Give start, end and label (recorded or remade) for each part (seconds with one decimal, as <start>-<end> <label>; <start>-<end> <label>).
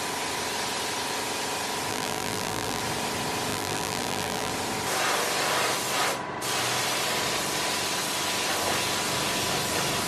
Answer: 0.0-1.9 recorded; 1.9-2.8 remade; 2.8-3.5 recorded; 3.5-4.5 remade; 4.5-10.1 recorded